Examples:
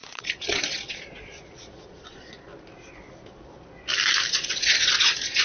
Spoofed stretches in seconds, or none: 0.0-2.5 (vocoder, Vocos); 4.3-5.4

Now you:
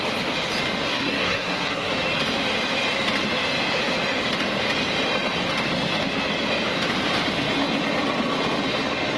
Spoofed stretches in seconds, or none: 0.9-1.9 (codec, SNAC)

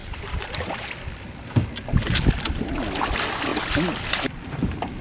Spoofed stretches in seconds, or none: 0.0-3.0 (vocoder, BigVGAN v2); 3.5-5.0

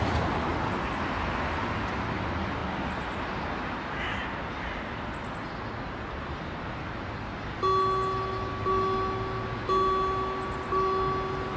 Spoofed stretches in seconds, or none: none

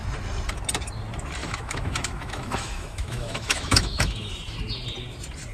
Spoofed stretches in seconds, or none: 1.4-4.3 (autoencoder, DAC-VAE)

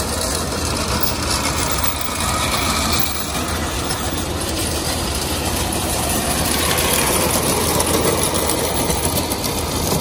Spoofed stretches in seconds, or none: 3.6-6.7 (vocoder, BigVGAN v2)

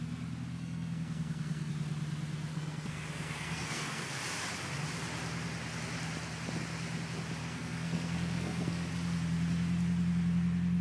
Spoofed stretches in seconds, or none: 0.5-1.7 (codec, SNAC); 2.5-4.2; 7.4-8.9